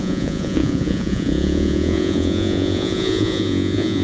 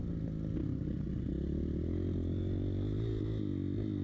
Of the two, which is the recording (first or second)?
second